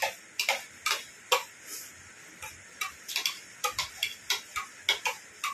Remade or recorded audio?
recorded